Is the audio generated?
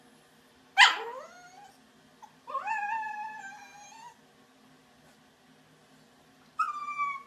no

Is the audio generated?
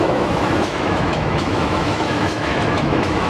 yes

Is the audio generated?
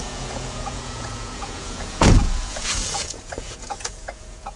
yes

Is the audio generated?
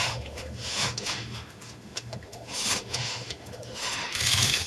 yes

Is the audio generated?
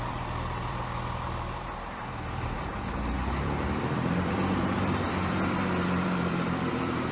yes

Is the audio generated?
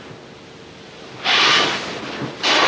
no